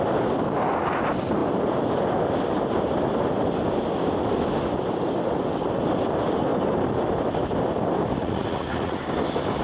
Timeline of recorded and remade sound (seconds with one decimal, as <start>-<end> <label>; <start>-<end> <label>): 0.0-8.2 recorded; 8.2-9.0 remade; 9.0-9.6 recorded